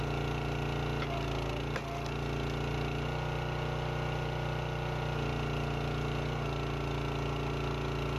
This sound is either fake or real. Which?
real